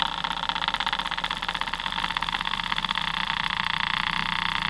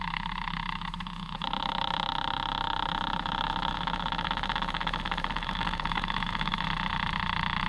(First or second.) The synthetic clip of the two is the second